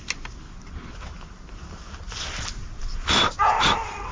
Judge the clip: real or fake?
real